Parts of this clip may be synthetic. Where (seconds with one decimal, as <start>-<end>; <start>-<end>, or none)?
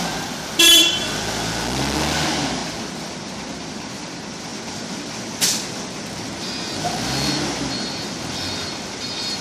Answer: none